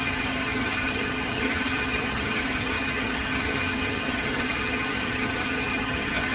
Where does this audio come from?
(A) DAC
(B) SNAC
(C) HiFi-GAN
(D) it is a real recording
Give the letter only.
C